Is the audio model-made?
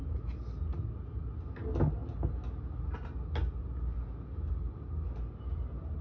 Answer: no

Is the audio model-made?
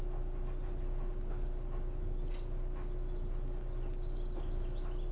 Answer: no